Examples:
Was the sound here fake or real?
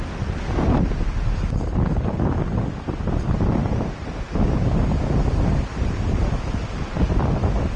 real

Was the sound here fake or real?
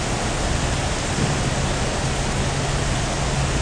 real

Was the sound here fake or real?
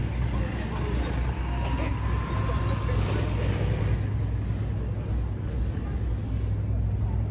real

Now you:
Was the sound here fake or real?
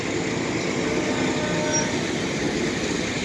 real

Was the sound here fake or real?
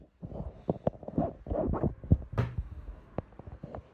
real